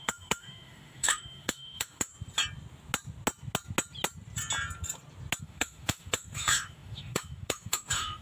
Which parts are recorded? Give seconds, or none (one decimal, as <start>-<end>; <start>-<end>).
2.1-5.4